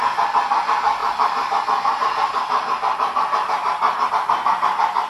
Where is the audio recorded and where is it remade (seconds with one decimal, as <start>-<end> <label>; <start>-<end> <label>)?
0.0-1.0 recorded; 1.0-4.1 remade; 4.1-5.1 recorded